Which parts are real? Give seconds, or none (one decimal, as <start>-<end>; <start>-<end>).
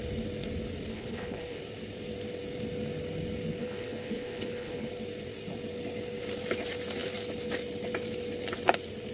0.0-0.9; 1.6-3.6; 4.9-9.1